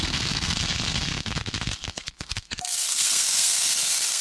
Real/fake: fake